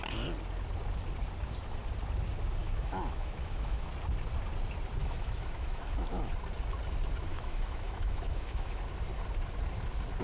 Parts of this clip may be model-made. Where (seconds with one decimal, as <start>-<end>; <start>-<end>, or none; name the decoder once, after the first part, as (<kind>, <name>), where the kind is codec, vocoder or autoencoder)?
2.6-3.9 (autoencoder, DAC-VAE); 5.0-6.3; 7.3-8.8

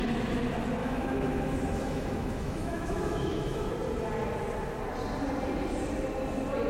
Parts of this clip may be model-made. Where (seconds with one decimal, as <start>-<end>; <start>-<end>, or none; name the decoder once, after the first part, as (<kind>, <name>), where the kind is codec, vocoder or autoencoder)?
0.8-3.7 (autoencoder, DAC-VAE)

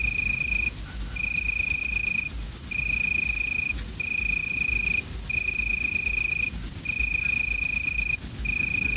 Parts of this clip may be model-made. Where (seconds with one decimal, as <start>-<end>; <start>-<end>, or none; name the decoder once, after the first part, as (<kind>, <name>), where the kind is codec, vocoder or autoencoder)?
none